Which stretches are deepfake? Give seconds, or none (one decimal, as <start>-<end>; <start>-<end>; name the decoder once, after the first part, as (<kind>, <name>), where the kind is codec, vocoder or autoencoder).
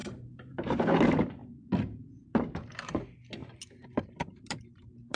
0.0-0.8 (vocoder, BigVGAN v2); 1.4-3.0; 3.4-5.2